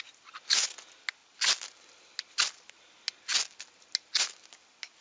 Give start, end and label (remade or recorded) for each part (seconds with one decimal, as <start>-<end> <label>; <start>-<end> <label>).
0.0-5.0 recorded